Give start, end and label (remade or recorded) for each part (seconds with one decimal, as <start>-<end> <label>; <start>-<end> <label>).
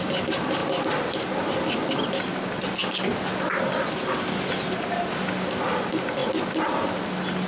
0.0-7.5 recorded